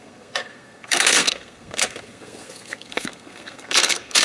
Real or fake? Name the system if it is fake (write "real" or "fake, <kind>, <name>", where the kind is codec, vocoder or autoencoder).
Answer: fake, codec, SNAC